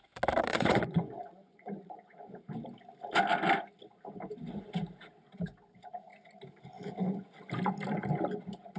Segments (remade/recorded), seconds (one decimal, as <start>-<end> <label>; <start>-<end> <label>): 0.0-0.5 recorded; 0.5-2.4 remade; 2.4-8.8 recorded